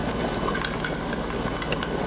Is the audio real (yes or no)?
yes